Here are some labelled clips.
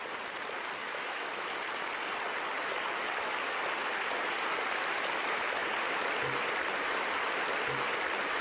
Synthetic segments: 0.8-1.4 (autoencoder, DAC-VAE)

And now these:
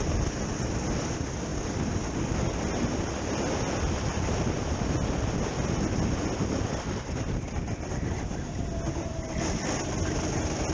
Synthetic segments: none

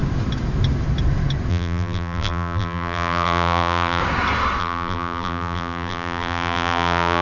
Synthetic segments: 1.5-4.0 (vocoder, BigVGAN v2); 4.6-7.2

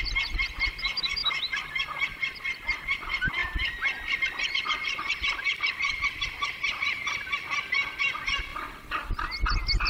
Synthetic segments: 1.2-2.8 (vocoder, BigVGAN v2); 3.4-8.0; 8.5-9.1

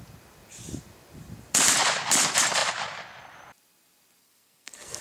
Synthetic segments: 4.2-5.0 (codec, SNAC)

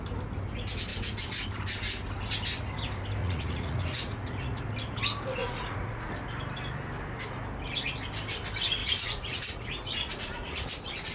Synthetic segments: 3.2-4.6 (vocoder, Vocos); 5.4-6.1; 8.8-10.7